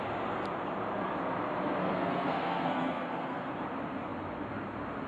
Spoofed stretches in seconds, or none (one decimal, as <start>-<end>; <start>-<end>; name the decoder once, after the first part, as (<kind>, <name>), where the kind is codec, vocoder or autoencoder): 1.8-3.5 (codec, SNAC)